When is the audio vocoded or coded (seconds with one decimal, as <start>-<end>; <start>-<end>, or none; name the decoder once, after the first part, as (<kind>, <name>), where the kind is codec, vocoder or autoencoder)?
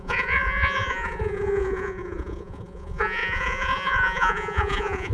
0.0-5.1 (vocoder, Vocos)